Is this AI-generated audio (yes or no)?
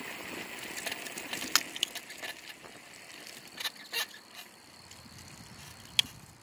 no